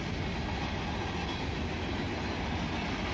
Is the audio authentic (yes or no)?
yes